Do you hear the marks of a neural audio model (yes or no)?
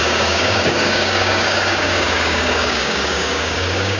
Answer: yes